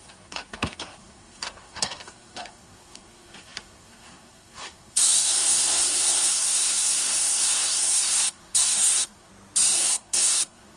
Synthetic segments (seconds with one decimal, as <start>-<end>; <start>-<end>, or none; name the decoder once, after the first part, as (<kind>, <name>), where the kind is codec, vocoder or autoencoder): 0.0-9.3 (codec, SNAC); 9.8-10.8